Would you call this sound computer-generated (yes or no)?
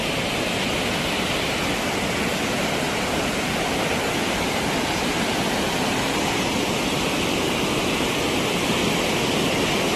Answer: no